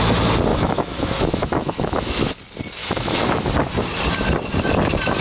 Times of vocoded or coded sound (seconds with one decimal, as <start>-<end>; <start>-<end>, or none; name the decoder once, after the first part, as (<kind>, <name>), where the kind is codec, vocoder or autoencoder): 0.5-2.3 (autoencoder, DAC-VAE); 2.8-3.5